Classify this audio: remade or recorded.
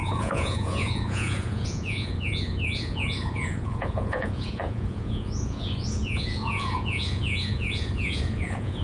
remade